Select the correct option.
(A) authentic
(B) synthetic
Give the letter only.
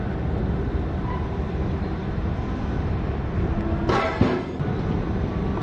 A